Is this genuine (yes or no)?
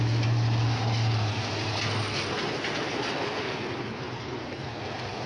yes